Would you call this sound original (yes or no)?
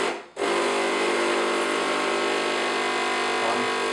yes